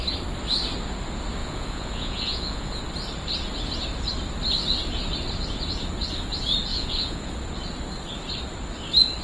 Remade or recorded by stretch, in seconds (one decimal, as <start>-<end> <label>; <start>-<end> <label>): 0.0-1.4 recorded; 1.4-2.8 remade; 2.8-6.7 recorded; 6.7-7.3 remade; 7.3-9.2 recorded